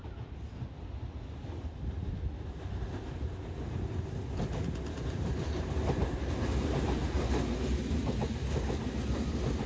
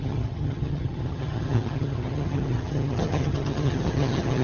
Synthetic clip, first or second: second